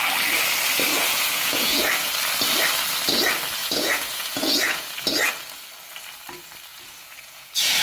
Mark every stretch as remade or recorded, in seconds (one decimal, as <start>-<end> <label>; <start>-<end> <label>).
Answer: 0.0-1.0 recorded; 1.0-2.1 remade; 2.1-3.6 recorded; 3.6-4.9 remade; 4.9-6.7 recorded; 6.7-7.8 remade